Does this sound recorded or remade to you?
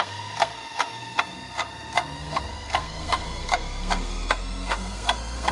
remade